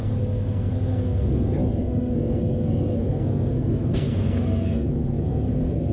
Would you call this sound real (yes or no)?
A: no